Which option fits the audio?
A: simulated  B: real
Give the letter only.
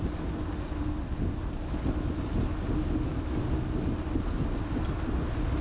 B